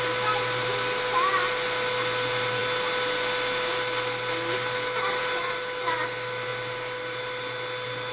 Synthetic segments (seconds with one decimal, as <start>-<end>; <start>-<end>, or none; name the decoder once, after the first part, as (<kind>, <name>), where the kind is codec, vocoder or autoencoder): none